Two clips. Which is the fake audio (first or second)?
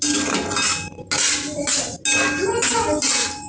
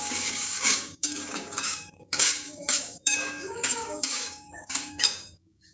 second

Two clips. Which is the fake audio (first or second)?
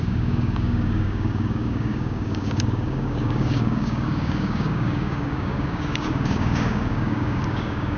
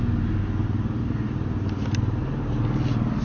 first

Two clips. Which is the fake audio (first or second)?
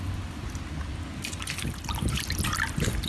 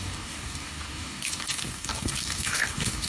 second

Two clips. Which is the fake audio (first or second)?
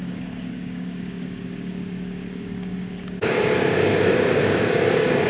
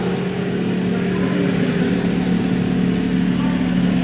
first